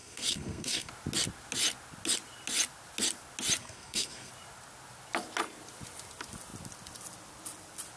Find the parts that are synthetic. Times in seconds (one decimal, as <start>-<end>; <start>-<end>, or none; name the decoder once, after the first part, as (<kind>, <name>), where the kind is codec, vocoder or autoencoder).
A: 0.0-0.9 (codec, SNAC); 3.6-4.3